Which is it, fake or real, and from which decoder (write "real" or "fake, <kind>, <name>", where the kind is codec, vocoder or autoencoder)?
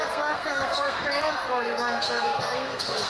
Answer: fake, codec, SNAC